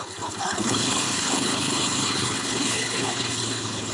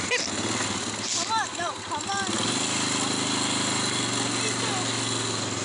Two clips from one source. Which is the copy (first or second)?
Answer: first